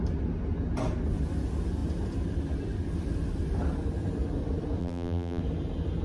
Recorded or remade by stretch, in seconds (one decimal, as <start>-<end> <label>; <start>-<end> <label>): 0.0-4.8 recorded; 4.8-5.4 remade; 5.4-6.0 recorded